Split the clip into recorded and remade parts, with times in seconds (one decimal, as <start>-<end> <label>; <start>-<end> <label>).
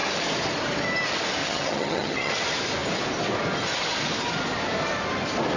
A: 0.0-1.4 recorded; 1.4-2.3 remade; 2.3-5.6 recorded